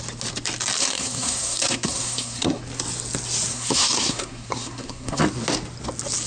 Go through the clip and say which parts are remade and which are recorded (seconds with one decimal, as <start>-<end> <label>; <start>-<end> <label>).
0.0-0.8 recorded; 0.8-2.6 remade; 2.6-3.5 recorded; 3.5-5.2 remade; 5.2-6.3 recorded